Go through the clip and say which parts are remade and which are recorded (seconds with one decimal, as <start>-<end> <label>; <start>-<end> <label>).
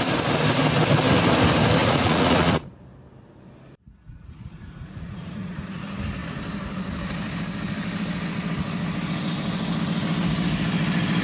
0.0-1.8 recorded; 1.8-2.7 remade; 2.7-4.1 recorded; 4.1-5.8 remade; 5.8-11.2 recorded